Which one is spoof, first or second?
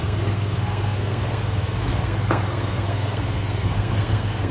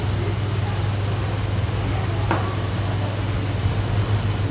first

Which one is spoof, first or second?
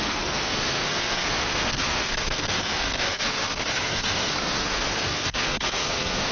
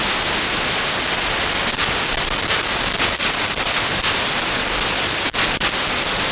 first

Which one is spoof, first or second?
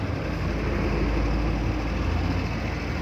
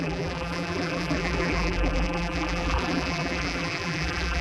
second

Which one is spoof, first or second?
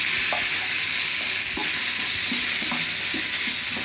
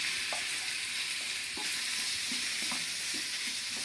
second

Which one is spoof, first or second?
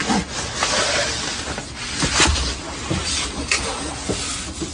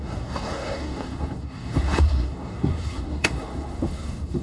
second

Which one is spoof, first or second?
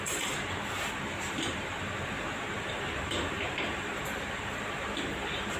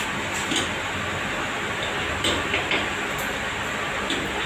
first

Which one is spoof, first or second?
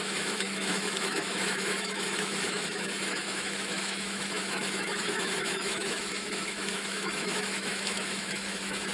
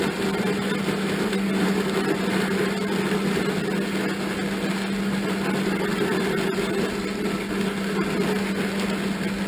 first